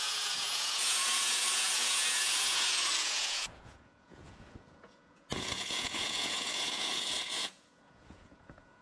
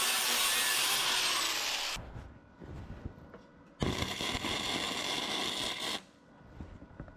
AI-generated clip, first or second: first